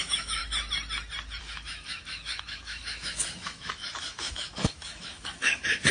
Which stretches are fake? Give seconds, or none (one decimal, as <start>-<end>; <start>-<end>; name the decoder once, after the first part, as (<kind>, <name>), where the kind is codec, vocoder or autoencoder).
0.0-0.4 (autoencoder, DAC-VAE); 1.4-5.9